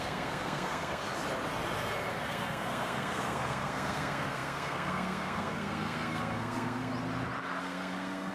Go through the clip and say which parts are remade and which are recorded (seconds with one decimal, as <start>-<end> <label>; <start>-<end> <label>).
0.0-1.0 remade; 1.0-2.1 recorded; 2.1-6.9 remade; 6.9-7.6 recorded; 7.6-8.3 remade